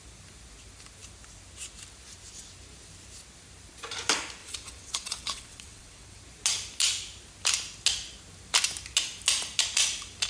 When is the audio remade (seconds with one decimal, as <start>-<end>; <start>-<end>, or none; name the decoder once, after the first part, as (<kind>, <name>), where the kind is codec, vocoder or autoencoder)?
4.4-6.2 (vocoder, WaveNeXt)

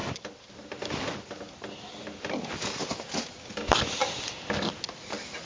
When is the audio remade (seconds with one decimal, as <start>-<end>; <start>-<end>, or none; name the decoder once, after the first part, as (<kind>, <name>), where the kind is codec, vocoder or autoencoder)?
0.0-0.6 (vocoder, BigVGAN v2); 4.0-4.7